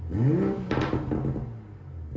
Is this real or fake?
real